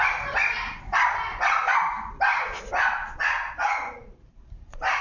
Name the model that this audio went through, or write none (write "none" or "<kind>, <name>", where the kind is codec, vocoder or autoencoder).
none